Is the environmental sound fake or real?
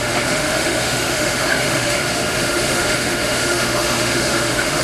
fake